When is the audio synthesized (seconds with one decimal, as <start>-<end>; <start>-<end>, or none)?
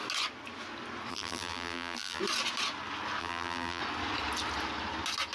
1.1-2.2; 3.2-3.8